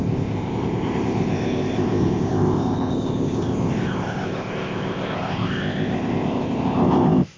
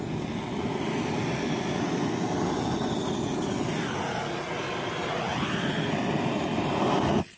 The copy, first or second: first